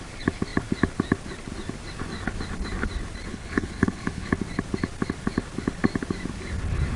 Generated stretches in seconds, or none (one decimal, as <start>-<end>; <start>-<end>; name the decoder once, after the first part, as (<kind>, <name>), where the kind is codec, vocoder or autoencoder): 3.3-4.3 (codec, HILCodec)